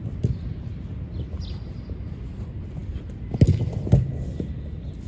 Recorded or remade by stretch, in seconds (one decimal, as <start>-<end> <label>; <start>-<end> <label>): 0.0-5.1 recorded